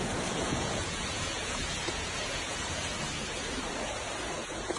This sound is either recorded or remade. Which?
remade